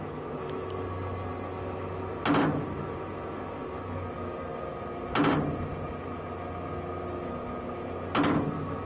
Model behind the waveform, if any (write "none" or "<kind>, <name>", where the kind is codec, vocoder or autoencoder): none